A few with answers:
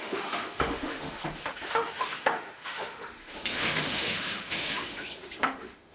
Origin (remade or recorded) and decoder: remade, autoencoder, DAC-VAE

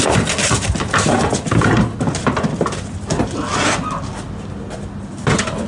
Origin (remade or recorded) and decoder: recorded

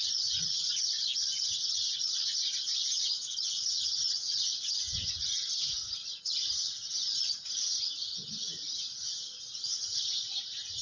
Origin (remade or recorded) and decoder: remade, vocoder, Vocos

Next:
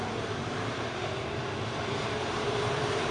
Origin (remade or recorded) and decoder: remade, vocoder, BigVGAN v2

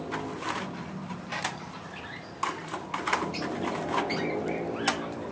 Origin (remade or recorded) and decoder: recorded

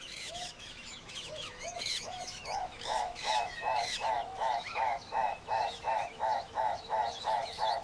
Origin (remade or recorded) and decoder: remade, autoencoder, DAC-VAE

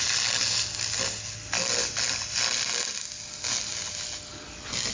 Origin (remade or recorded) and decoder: recorded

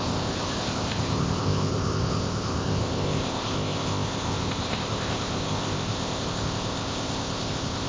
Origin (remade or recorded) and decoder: remade, codec, ZipCodec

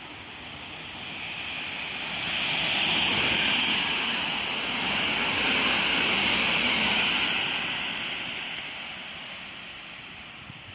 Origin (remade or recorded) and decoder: recorded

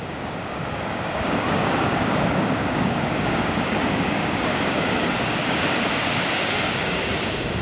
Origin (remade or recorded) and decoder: remade, codec, DAC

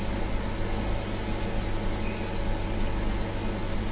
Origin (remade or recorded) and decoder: recorded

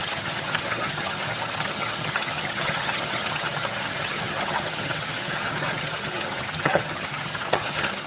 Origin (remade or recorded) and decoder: remade, vocoder, HiFi-GAN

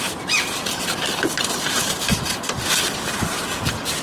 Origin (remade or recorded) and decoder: recorded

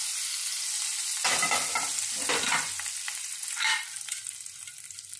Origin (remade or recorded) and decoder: recorded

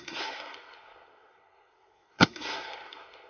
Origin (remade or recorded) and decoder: remade, codec, SNAC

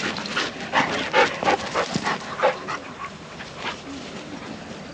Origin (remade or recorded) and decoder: recorded